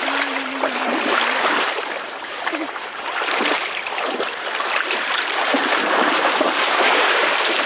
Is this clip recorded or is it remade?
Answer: remade